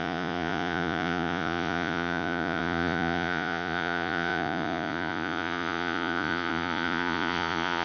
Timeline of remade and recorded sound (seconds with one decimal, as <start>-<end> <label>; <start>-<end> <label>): 0.0-7.8 remade